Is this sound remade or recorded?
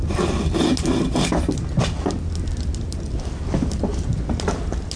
recorded